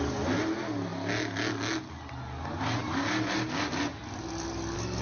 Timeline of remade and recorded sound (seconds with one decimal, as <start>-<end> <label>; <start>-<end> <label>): 0.0-5.0 recorded